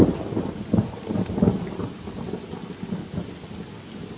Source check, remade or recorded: recorded